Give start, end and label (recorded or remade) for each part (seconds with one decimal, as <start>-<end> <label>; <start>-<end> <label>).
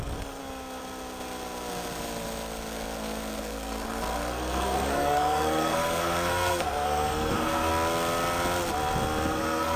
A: 0.0-0.4 remade; 0.4-3.4 recorded; 3.4-7.7 remade; 7.7-9.3 recorded; 9.3-9.8 remade